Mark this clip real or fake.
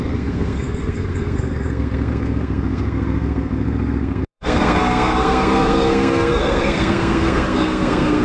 fake